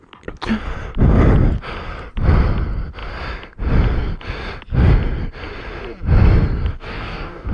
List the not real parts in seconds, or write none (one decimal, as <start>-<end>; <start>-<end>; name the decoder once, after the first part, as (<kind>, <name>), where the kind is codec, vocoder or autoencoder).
6.7-7.5 (codec, DAC)